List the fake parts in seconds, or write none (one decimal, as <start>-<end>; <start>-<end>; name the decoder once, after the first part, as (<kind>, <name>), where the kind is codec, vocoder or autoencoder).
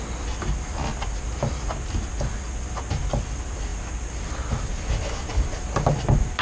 none